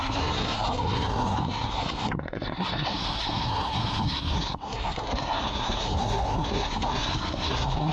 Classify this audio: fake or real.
fake